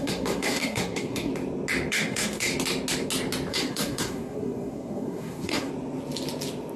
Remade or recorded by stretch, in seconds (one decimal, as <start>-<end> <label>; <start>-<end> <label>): 0.0-1.3 remade; 1.3-1.9 recorded; 1.9-2.5 remade; 2.5-3.5 recorded; 3.5-5.7 remade; 5.7-6.8 recorded